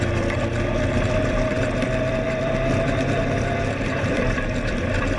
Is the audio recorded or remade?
remade